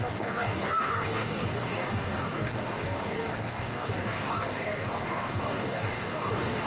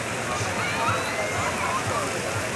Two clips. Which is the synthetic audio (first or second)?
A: first